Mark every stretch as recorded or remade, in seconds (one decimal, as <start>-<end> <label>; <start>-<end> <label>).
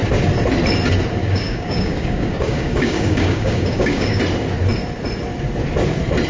0.0-1.2 recorded; 1.2-4.2 remade; 4.2-6.3 recorded